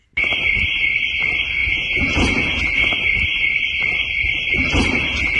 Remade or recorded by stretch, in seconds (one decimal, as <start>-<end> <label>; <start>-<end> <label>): 0.0-1.6 recorded; 1.6-2.6 remade; 2.6-5.4 recorded